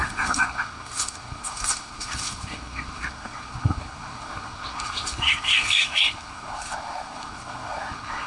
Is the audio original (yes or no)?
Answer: no